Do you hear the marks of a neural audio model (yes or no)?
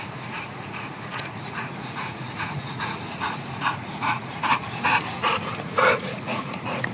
yes